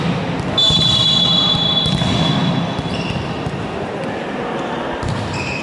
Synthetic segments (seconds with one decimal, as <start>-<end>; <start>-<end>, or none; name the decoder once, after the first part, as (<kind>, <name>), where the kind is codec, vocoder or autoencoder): 0.6-1.8 (vocoder, BigVGAN v2)